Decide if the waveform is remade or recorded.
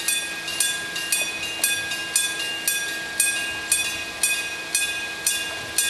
recorded